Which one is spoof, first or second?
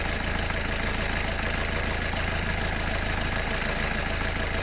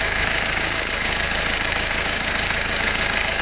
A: second